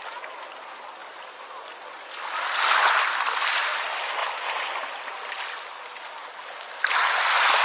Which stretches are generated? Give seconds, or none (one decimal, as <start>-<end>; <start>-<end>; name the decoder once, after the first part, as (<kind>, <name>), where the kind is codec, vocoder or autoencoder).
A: none